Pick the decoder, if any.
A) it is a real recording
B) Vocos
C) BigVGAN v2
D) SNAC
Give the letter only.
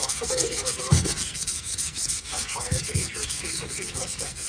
D